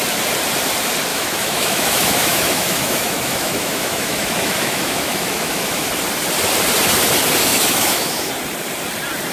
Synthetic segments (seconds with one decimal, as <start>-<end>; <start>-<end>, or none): 1.1-5.9; 7.5-8.3